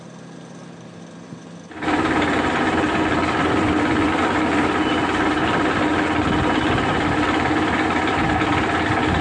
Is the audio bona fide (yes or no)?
yes